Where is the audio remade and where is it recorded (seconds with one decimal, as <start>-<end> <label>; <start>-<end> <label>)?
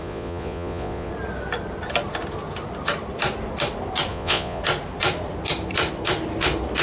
0.0-1.1 remade; 1.1-4.1 recorded; 4.1-4.6 remade; 4.6-6.8 recorded